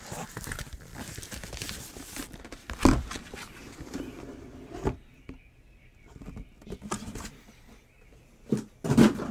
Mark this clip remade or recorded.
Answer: recorded